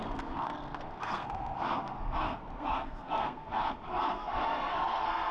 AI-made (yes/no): yes